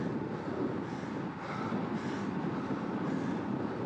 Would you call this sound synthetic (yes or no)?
no